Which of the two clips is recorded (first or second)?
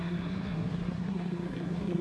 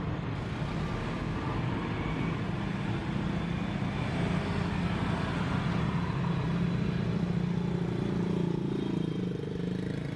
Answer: second